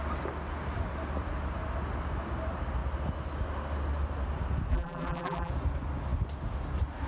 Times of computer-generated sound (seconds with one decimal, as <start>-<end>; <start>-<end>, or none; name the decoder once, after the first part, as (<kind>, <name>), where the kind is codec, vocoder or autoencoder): 4.7-5.5 (vocoder, BigVGAN v2)